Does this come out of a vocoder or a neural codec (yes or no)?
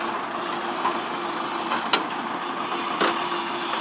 no